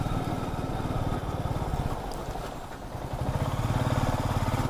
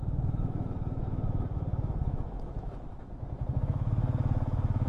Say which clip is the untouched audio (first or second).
first